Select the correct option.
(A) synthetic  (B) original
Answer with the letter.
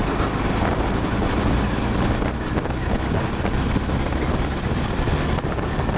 B